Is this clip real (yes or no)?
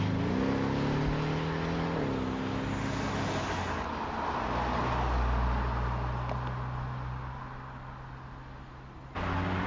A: yes